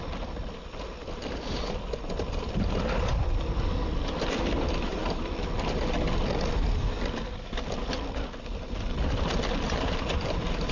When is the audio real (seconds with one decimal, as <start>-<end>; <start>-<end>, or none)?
0.0-10.7